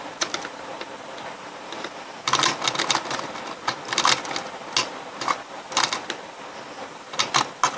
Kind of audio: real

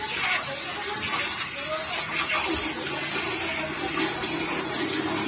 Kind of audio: real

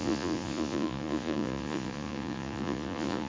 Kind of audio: fake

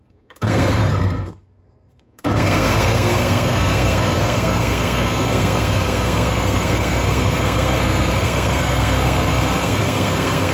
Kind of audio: fake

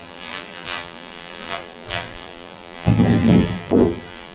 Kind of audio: fake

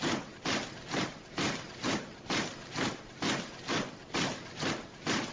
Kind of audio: real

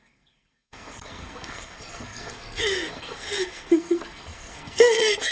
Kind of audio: fake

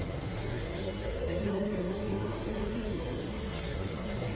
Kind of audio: fake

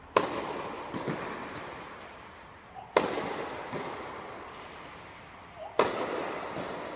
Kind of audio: real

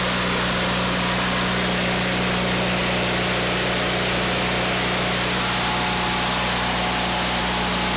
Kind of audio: real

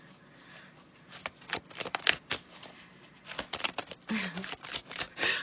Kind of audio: real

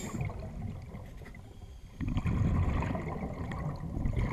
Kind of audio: real